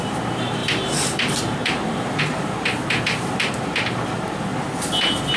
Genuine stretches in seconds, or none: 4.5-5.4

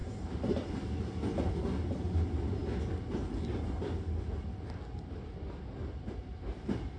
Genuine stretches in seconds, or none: 0.0-7.0

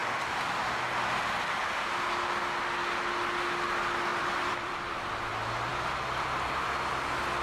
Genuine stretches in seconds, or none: 0.0-4.1; 5.0-7.4

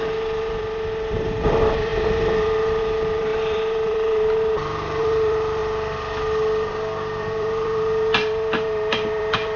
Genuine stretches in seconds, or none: 5.6-7.2

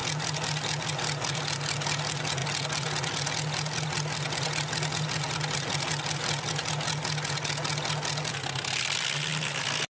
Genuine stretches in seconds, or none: 0.0-10.0

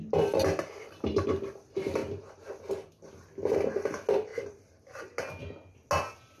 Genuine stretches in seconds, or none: 0.0-1.1; 1.6-4.3; 5.0-6.4

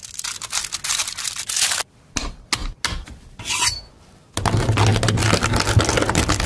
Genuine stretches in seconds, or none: 0.0-6.5

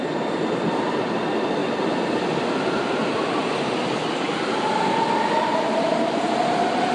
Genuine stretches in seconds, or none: 0.0-6.9